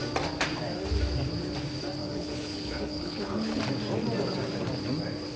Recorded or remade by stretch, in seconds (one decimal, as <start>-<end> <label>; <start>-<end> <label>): 0.0-2.0 recorded; 2.0-3.6 remade; 3.6-5.4 recorded